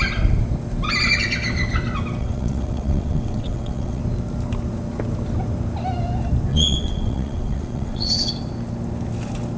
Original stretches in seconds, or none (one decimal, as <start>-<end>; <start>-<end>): 0.0-2.2; 4.0-6.5; 8.3-9.6